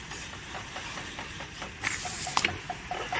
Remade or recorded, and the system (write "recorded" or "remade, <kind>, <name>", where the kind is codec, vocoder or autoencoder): recorded